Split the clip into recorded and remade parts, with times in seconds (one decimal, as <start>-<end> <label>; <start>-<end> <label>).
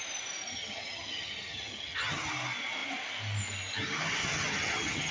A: 0.0-0.5 recorded; 0.5-2.3 remade; 2.3-4.2 recorded; 4.2-5.1 remade